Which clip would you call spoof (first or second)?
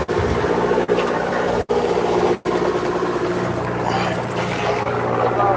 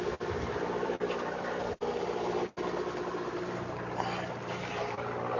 second